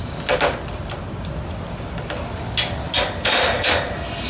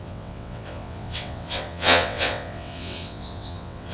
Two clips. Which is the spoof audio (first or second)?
second